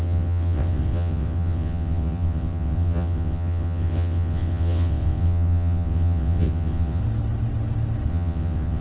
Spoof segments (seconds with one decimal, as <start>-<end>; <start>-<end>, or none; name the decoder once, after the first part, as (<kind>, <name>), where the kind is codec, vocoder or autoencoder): 0.0-7.0 (vocoder, WaveNeXt); 8.1-8.8